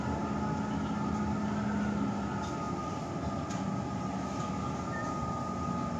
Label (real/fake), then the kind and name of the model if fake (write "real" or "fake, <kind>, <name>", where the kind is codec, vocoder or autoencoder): fake, vocoder, BigVGAN v2